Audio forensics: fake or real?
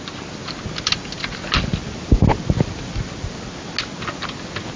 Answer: real